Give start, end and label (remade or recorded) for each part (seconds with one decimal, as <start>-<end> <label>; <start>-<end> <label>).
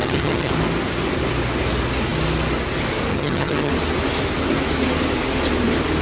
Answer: 0.0-0.5 remade; 0.5-3.1 recorded; 3.1-3.7 remade; 3.7-6.0 recorded